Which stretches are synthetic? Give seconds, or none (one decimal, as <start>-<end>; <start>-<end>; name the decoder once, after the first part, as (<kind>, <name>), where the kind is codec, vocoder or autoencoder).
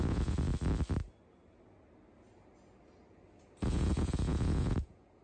0.0-0.5 (vocoder, Vocos); 3.6-5.2